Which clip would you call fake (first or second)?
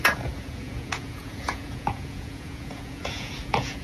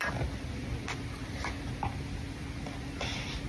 first